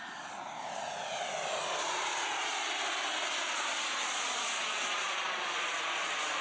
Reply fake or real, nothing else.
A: real